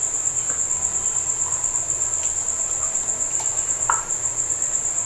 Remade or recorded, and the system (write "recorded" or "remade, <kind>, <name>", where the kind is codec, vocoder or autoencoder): recorded